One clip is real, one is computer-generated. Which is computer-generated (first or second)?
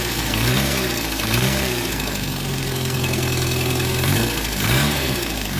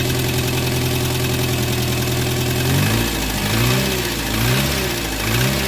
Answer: first